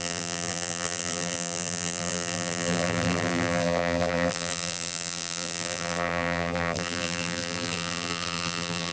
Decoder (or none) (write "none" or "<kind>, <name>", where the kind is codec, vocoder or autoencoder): vocoder, BigVGAN v2